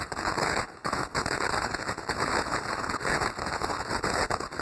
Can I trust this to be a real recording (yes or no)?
no